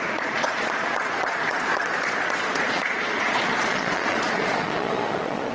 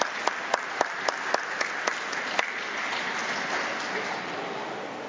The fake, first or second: first